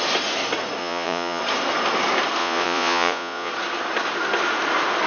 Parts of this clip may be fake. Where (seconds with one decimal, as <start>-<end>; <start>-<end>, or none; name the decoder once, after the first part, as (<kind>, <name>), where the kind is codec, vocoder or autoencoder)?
0.8-1.4 (vocoder, Vocos); 2.4-3.5